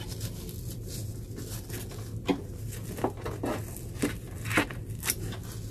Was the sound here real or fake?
real